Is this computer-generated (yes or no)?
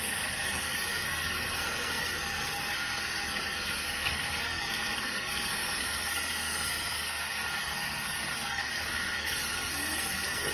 yes